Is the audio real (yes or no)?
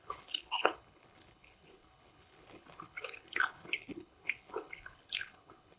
no